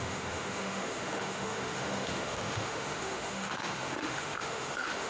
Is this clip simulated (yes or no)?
yes